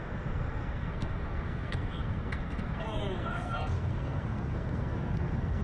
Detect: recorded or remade remade